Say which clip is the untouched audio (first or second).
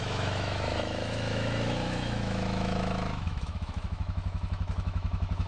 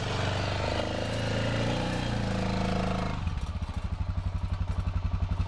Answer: second